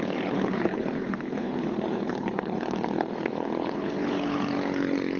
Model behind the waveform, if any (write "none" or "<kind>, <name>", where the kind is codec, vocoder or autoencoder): codec, HILCodec